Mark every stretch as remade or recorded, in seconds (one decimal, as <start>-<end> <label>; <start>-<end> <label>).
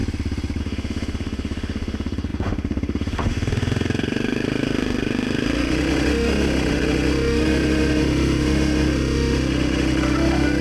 0.0-0.6 recorded; 0.6-10.6 remade